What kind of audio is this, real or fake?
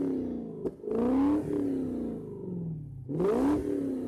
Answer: real